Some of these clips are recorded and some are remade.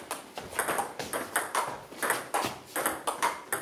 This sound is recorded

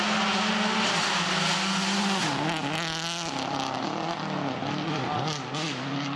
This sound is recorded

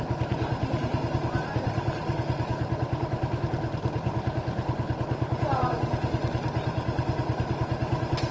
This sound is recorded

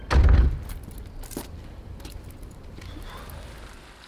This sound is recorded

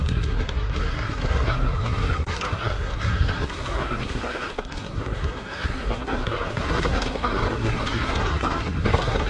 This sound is remade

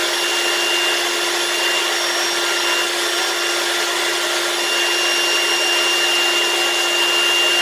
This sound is recorded